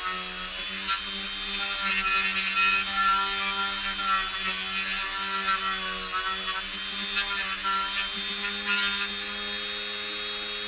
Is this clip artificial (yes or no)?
no